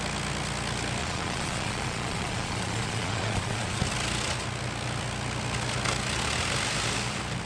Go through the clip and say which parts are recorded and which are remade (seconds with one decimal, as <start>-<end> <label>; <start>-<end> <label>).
0.0-1.0 recorded; 1.0-3.8 remade; 3.8-7.5 recorded